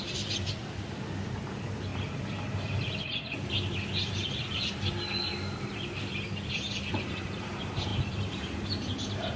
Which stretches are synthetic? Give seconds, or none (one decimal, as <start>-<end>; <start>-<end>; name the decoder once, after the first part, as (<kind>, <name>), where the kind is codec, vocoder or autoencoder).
0.0-0.6 (vocoder, BigVGAN v2); 1.4-1.9; 6.5-9.4